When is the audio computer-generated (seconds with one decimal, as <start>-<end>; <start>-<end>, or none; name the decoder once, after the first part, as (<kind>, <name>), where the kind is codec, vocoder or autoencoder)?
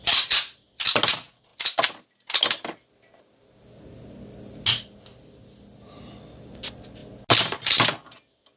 none